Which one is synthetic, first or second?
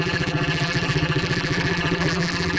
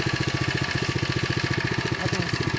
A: first